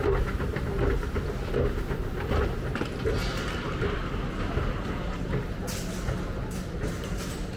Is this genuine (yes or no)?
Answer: yes